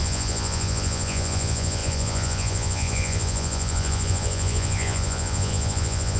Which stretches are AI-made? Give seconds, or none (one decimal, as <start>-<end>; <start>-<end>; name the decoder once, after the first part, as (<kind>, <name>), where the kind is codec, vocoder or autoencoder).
0.0-6.2 (vocoder, Vocos)